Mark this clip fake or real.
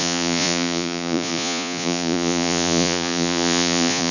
fake